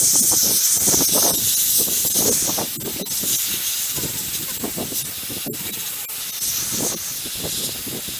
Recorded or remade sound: recorded